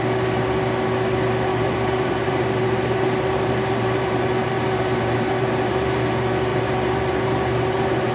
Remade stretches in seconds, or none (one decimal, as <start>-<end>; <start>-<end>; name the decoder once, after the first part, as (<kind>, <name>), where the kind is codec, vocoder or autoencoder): 1.5-6.1 (vocoder, BigVGAN v2); 6.5-8.1